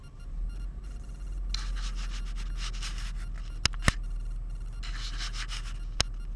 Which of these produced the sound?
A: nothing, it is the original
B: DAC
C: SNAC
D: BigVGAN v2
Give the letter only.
A